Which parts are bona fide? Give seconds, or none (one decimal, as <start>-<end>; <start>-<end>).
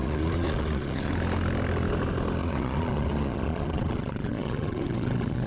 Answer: 1.1-2.4